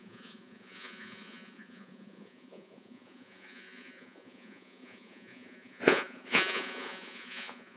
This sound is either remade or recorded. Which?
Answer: remade